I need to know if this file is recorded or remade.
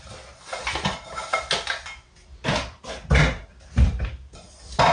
recorded